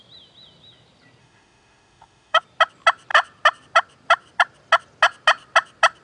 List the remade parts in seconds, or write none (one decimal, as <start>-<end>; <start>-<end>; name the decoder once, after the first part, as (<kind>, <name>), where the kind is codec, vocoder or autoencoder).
1.2-2.4 (autoencoder, DAC-VAE)